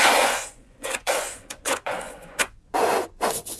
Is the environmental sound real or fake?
fake